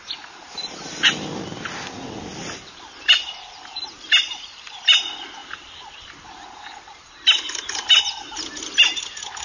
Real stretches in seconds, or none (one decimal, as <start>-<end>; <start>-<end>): 0.0-2.3; 5.0-5.4; 8.0-9.4